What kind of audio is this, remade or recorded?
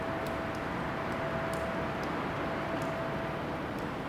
recorded